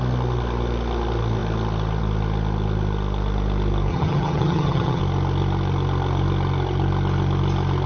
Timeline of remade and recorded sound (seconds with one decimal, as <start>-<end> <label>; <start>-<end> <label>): 0.0-3.9 recorded; 3.9-5.0 remade; 5.0-7.9 recorded